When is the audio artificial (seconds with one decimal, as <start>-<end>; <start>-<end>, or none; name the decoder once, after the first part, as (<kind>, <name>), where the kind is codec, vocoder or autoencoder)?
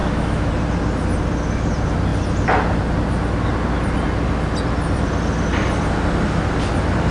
0.0-0.5 (autoencoder, DAC-VAE)